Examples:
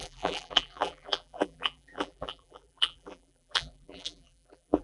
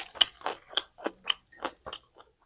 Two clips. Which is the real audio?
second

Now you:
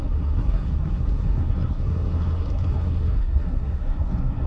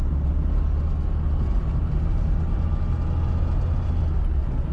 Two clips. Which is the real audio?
second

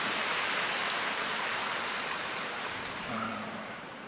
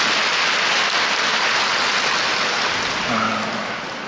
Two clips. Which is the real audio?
second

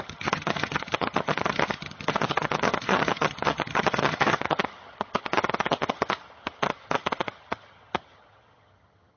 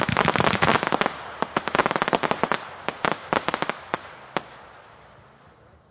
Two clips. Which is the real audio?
second